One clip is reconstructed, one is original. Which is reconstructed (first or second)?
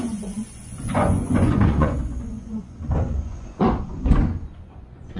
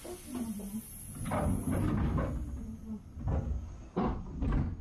first